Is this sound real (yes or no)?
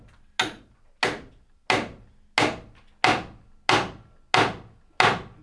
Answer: yes